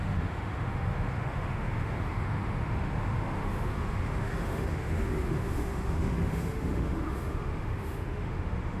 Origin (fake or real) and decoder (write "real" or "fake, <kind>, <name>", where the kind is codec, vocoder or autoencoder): fake, autoencoder, DAC-VAE